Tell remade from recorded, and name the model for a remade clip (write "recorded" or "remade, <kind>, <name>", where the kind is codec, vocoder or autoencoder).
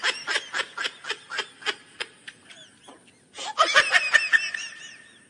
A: recorded